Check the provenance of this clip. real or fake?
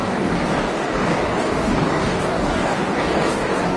fake